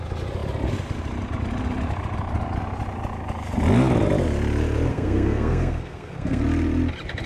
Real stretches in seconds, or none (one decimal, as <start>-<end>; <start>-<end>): 0.0-4.9; 6.4-7.3